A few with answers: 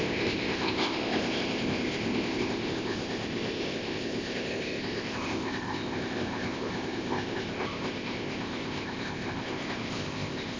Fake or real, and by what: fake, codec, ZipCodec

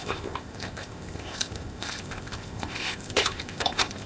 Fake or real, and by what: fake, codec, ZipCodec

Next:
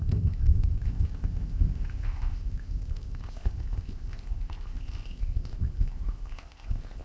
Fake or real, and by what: fake, codec, ZipCodec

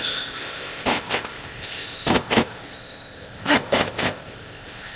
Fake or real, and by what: fake, codec, ZipCodec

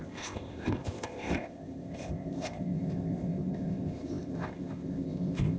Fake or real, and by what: fake, codec, ZipCodec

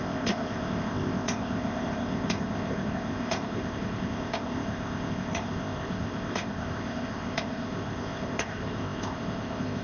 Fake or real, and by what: fake, codec, ZipCodec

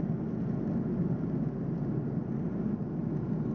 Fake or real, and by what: real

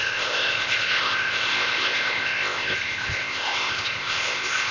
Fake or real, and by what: fake, codec, ZipCodec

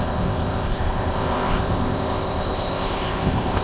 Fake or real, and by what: fake, codec, ZipCodec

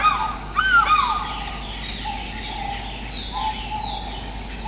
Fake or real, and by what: real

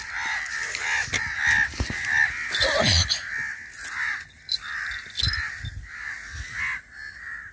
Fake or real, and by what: real